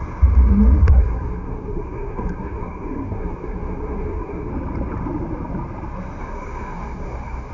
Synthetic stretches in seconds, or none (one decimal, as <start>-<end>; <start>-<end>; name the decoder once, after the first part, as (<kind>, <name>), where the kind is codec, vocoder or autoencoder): 0.8-4.5 (codec, SNAC); 6.2-7.5